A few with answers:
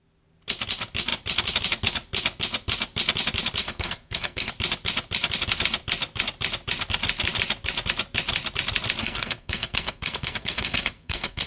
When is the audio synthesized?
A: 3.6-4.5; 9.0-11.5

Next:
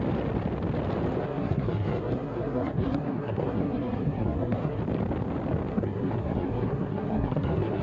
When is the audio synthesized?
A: 1.2-4.8; 5.7-7.8

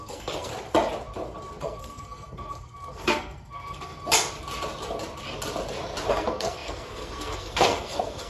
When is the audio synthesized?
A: 0.0-0.5; 1.6-3.9; 6.1-8.3

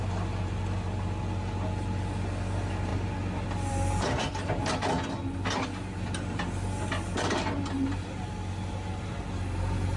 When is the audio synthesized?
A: none